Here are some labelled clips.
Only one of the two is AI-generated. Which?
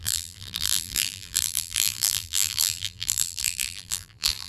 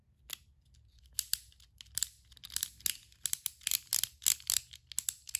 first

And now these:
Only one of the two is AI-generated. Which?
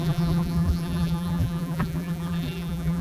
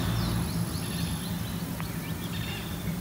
first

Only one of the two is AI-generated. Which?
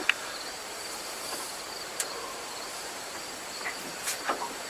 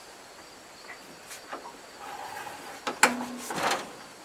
first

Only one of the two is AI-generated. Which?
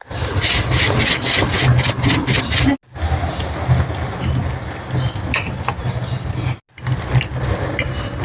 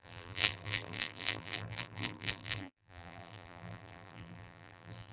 second